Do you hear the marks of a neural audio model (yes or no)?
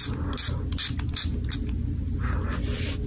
no